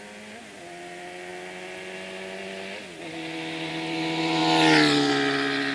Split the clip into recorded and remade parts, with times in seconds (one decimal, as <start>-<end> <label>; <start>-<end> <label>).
0.0-5.7 recorded